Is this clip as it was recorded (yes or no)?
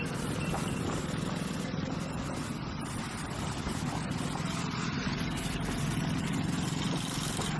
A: yes